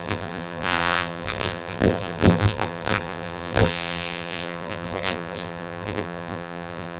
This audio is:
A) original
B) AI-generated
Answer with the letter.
B